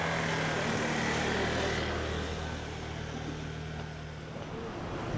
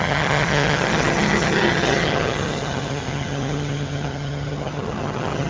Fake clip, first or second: second